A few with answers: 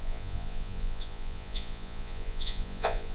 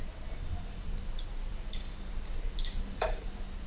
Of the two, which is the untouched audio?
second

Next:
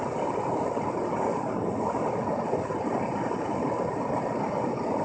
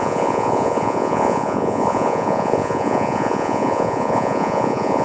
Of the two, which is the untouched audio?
first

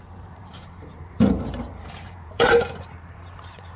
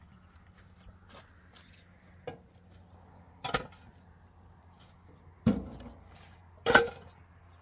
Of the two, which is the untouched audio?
second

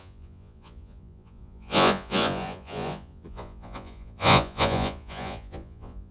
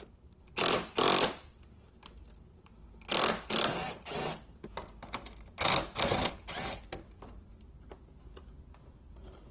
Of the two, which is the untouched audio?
second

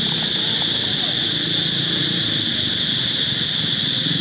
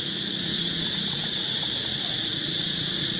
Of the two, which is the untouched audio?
first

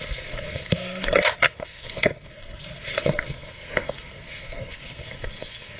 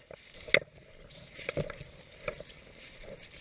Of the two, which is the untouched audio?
second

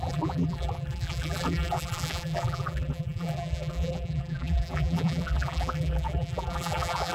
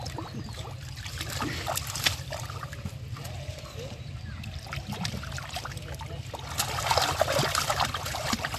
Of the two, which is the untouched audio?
second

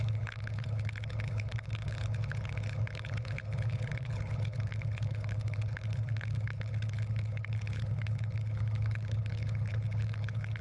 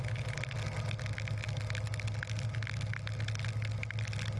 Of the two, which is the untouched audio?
second